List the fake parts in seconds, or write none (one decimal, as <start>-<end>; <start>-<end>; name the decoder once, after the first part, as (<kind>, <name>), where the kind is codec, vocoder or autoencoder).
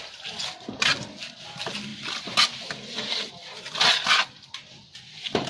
none